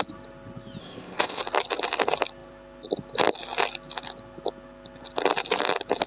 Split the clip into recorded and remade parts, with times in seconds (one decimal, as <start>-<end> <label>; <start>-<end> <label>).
0.0-0.8 recorded; 0.8-1.4 remade; 1.4-6.1 recorded